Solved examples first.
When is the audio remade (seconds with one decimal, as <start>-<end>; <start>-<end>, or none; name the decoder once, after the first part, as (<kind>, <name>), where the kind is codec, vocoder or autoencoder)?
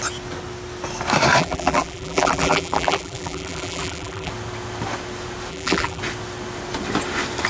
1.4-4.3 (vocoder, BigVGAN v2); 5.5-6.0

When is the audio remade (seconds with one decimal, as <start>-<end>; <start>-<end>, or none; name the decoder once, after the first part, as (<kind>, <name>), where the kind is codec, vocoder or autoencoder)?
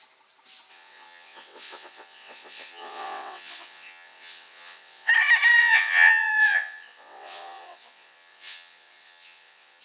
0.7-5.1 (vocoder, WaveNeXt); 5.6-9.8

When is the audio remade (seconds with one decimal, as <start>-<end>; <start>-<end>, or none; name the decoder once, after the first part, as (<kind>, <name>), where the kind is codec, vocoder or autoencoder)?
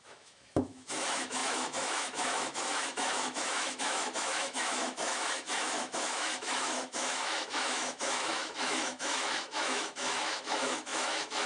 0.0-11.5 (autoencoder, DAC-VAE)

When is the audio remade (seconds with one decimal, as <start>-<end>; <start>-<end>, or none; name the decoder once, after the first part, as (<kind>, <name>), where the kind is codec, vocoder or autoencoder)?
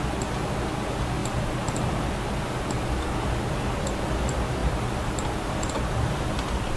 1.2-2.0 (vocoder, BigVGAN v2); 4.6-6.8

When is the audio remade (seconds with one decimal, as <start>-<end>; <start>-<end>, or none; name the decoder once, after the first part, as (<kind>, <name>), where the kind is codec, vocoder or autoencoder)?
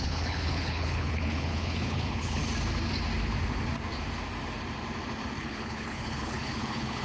0.0-2.4 (codec, HILCodec); 5.4-7.0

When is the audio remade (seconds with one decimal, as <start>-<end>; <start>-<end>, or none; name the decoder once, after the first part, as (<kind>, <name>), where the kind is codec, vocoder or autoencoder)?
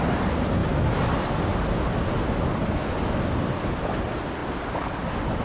none